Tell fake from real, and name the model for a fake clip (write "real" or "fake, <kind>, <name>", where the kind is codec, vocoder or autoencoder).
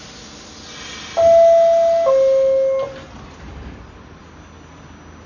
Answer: real